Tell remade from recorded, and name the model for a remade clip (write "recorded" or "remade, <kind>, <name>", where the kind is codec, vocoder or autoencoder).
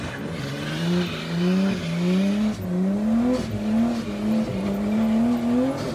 recorded